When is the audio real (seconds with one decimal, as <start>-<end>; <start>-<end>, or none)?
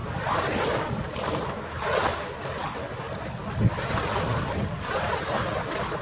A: 0.0-6.0